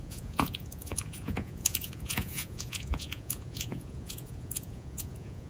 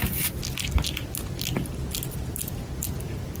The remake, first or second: first